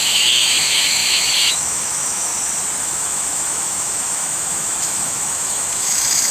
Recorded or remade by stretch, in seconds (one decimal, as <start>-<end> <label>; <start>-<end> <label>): 0.0-2.3 remade; 2.3-2.8 recorded; 2.8-6.3 remade